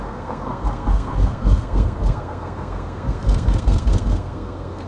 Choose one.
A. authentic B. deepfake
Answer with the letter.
B